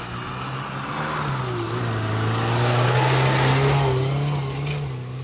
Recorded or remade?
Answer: recorded